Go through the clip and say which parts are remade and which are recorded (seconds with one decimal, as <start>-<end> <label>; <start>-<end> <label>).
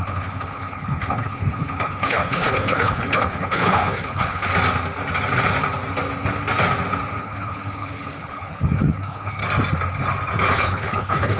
0.0-4.5 remade; 4.5-7.2 recorded; 7.2-9.4 remade; 9.4-10.5 recorded; 10.5-11.4 remade